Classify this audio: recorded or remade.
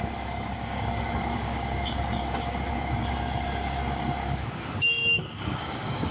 remade